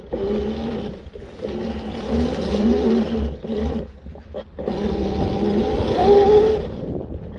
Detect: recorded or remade recorded